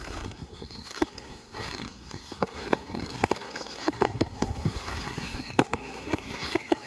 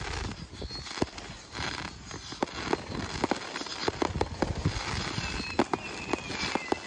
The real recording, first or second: second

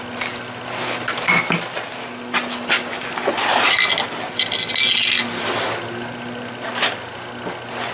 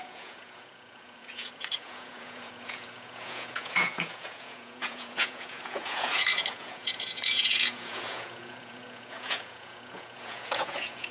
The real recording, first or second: first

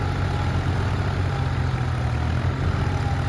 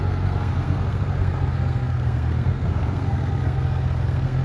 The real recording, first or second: first